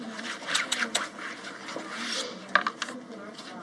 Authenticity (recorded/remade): recorded